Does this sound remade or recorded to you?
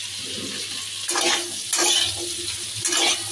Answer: recorded